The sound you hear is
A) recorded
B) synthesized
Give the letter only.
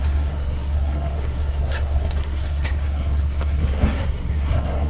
B